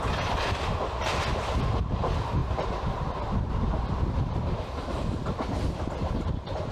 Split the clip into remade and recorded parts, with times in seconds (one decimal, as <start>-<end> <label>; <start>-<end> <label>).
0.0-6.7 recorded